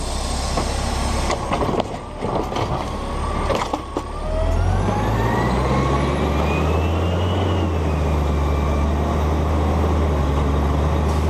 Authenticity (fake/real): real